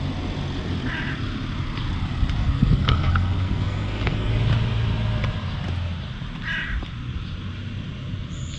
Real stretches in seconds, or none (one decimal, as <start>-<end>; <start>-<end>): 0.0-2.4; 4.3-8.6